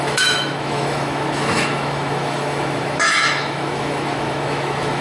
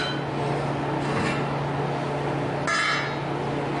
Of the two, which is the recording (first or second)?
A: second